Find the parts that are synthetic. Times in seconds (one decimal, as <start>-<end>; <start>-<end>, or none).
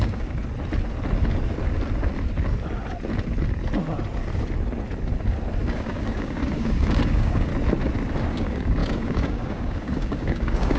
0.0-0.4; 5.6-7.5; 8.3-10.8